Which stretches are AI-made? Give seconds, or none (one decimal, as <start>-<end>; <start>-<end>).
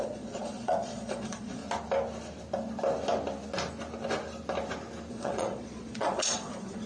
0.0-1.6; 5.1-6.9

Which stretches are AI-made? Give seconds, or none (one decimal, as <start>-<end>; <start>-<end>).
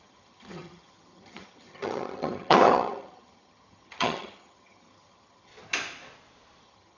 0.0-5.5; 6.6-7.0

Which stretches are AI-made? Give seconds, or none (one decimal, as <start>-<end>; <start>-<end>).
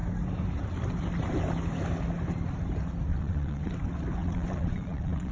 3.1-3.7; 4.2-5.3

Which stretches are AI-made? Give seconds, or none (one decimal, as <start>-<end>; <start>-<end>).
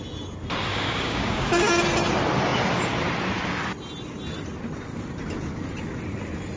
0.7-1.7